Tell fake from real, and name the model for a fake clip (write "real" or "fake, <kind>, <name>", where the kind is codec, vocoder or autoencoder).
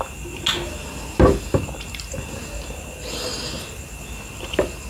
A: real